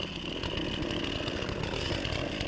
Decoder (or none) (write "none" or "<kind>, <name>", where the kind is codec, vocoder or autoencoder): none